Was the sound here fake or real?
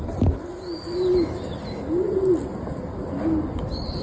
real